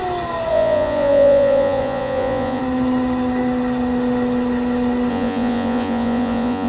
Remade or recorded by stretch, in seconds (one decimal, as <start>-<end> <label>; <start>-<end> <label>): 0.0-0.5 recorded; 0.5-2.6 remade; 2.6-5.1 recorded; 5.1-6.7 remade